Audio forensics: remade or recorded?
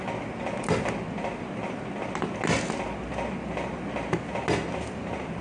recorded